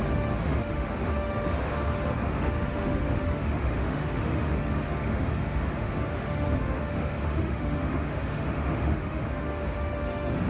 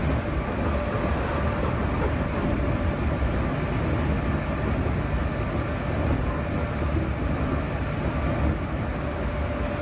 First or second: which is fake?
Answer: first